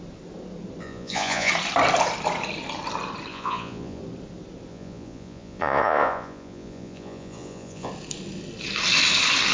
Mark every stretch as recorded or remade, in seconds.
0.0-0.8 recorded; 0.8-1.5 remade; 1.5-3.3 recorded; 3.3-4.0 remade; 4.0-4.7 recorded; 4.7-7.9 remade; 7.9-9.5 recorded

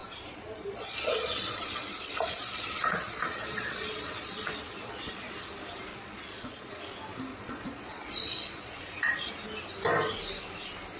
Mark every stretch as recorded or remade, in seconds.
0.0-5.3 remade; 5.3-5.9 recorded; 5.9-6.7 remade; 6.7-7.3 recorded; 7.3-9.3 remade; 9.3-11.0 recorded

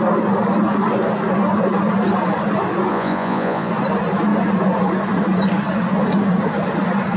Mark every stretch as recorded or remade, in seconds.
0.0-2.9 recorded; 2.9-3.7 remade; 3.7-7.2 recorded

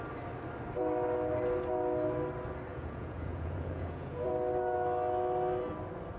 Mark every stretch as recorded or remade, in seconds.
0.0-2.7 recorded; 2.7-4.3 remade; 4.3-6.2 recorded